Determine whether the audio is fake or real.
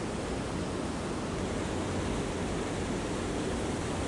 real